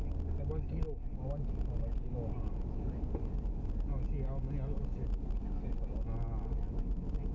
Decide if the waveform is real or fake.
real